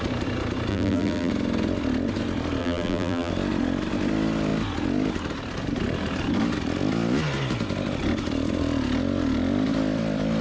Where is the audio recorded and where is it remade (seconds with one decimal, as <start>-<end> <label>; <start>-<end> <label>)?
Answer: 0.0-0.7 recorded; 0.7-1.3 remade; 1.3-2.6 recorded; 2.6-3.3 remade; 3.3-10.4 recorded